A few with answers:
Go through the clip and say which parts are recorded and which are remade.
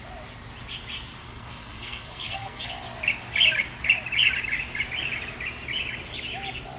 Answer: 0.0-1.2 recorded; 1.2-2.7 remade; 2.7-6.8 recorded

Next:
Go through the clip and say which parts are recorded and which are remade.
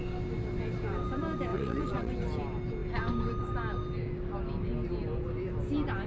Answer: 0.0-1.5 recorded; 1.5-2.1 remade; 2.1-6.1 recorded